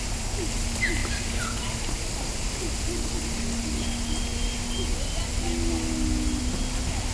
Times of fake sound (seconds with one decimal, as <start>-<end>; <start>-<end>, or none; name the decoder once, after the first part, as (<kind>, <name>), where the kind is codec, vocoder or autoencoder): 1.0-3.1 (vocoder, BigVGAN v2)